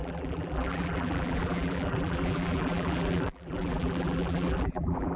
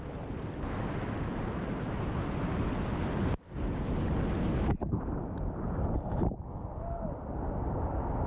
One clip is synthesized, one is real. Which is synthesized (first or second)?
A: first